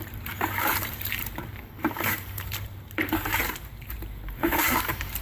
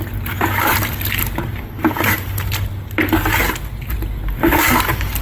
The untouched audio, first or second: second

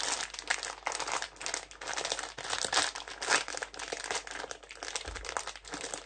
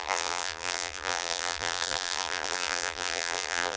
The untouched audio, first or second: first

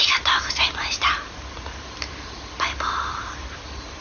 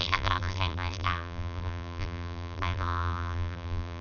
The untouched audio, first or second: first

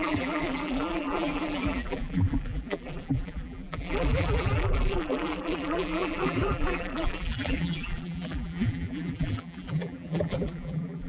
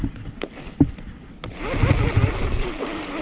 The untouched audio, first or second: second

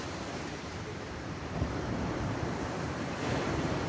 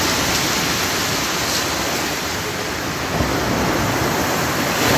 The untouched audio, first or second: second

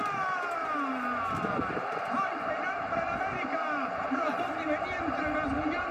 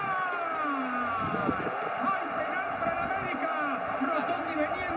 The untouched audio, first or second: second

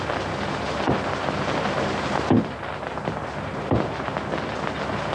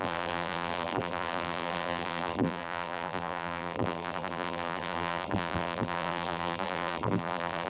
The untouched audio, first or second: first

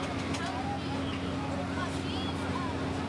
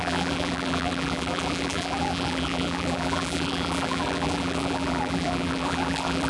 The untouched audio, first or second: first